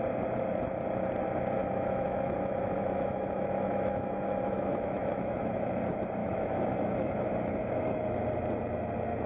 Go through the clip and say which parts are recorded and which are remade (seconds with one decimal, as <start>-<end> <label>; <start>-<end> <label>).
0.0-1.6 recorded; 1.6-5.8 remade; 5.8-6.2 recorded; 6.2-8.2 remade; 8.2-9.3 recorded